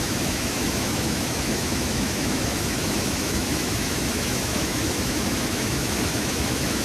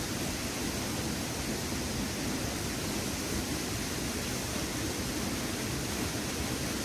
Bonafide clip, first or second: second